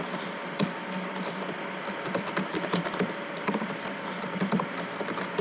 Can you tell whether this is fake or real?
fake